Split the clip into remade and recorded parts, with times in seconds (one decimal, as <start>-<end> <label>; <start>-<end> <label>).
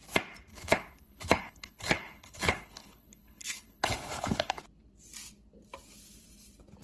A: 0.0-0.5 recorded; 0.5-4.6 remade; 4.6-6.8 recorded